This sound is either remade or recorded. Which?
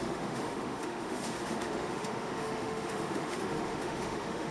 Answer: remade